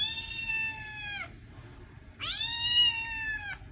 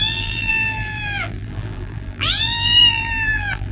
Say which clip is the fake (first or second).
second